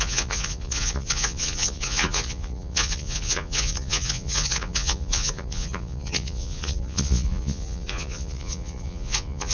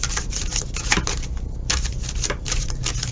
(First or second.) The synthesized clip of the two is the first